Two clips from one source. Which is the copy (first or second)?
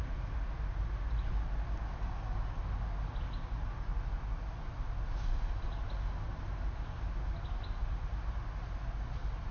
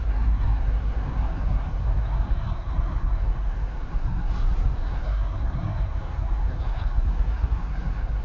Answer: second